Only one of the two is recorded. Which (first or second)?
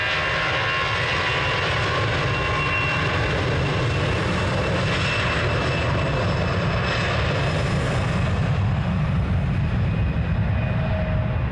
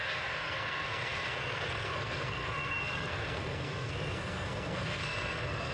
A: first